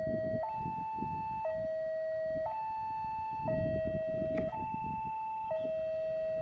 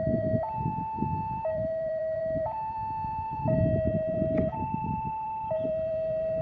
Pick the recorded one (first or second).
first